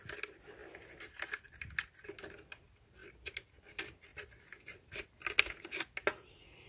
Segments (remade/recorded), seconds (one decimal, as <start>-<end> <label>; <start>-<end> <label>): 0.0-6.7 recorded